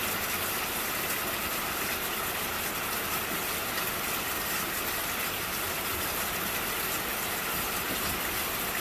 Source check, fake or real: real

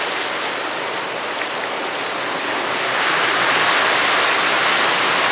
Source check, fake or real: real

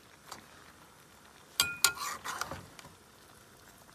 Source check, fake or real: real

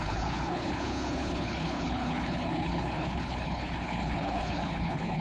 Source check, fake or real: fake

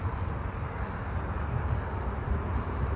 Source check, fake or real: fake